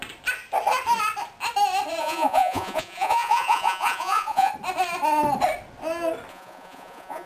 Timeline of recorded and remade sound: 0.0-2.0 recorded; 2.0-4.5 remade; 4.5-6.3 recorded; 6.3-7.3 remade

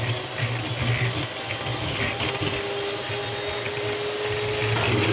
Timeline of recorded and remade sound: 0.0-5.1 recorded

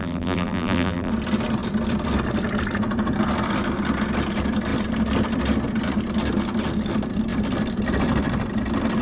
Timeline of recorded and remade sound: 0.0-1.1 remade; 1.1-9.0 recorded

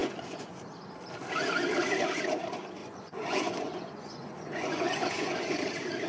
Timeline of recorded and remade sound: 0.0-0.6 remade; 0.6-2.8 recorded; 2.8-5.6 remade; 5.6-6.1 recorded

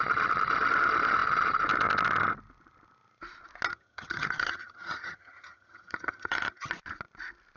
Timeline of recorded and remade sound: 0.0-3.7 recorded; 3.7-6.7 remade; 6.7-7.6 recorded

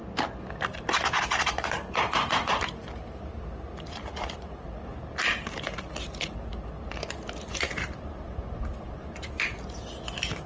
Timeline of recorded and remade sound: 0.0-10.5 recorded